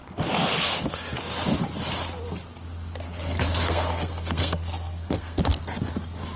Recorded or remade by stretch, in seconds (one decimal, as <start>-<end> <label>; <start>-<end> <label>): 0.0-3.5 recorded; 3.5-5.4 remade; 5.4-6.4 recorded